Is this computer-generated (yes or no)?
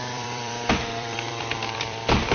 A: yes